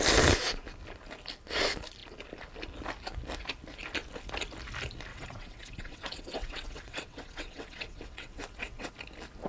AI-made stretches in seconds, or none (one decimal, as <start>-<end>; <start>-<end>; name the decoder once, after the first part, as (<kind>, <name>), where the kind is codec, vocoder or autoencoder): 5.1-8.9 (vocoder, WaveNeXt)